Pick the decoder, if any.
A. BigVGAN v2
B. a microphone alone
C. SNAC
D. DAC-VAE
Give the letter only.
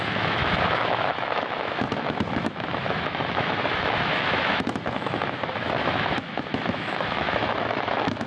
D